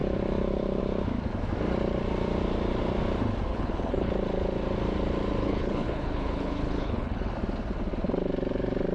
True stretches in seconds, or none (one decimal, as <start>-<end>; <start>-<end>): 0.0-3.5; 4.1-5.4; 7.3-8.9